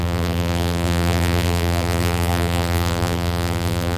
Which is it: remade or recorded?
remade